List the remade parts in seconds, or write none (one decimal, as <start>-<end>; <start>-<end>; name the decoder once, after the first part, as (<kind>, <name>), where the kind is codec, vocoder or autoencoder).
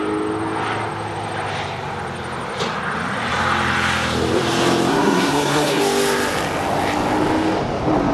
4.9-5.8 (codec, SNAC)